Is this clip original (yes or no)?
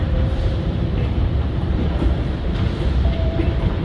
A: no